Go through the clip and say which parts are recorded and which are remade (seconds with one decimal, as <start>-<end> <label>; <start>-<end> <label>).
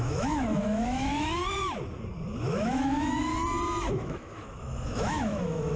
0.0-1.4 remade; 1.4-2.4 recorded; 2.4-3.3 remade; 3.3-3.9 recorded; 3.9-5.8 remade